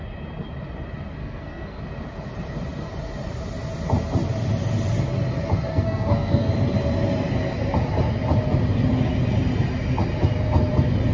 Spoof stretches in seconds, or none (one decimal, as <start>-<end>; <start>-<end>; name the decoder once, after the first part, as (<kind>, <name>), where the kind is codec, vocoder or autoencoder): 1.2-1.8 (codec, SNAC); 5.7-6.5